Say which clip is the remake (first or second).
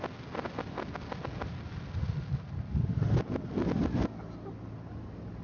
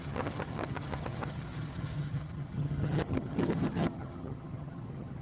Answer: second